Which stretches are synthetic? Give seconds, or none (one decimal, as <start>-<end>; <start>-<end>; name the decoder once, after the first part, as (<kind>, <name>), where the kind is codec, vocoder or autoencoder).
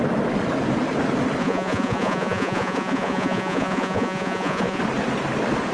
1.4-4.8 (vocoder, Vocos)